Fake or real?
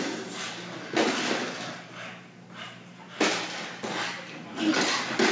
real